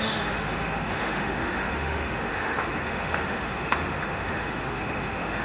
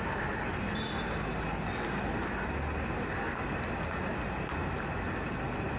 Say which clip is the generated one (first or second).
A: first